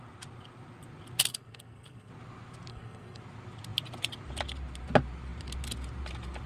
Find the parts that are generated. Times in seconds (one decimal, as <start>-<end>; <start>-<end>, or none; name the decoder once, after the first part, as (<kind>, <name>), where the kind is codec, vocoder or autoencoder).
1.3-2.1 (codec, SNAC); 2.7-3.2